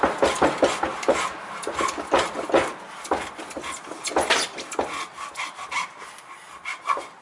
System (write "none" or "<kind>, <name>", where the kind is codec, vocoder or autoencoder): none